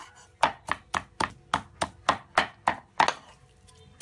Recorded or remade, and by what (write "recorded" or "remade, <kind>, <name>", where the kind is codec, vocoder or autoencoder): recorded